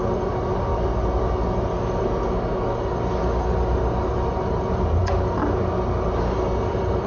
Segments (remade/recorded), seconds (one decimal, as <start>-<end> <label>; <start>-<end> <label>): 0.0-7.1 recorded